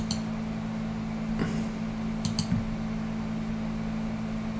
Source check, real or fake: real